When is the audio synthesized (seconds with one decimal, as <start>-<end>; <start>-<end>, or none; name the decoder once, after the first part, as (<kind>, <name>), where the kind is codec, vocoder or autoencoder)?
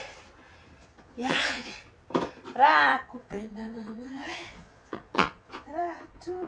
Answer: 0.8-1.8 (vocoder, Vocos); 2.9-6.5